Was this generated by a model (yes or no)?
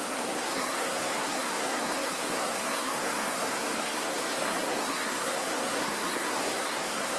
yes